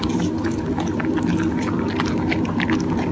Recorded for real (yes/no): yes